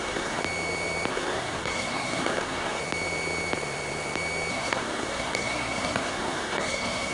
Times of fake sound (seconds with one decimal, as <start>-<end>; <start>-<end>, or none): 0.0-0.4; 1.1-2.8; 4.5-7.1